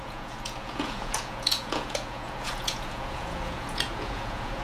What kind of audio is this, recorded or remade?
remade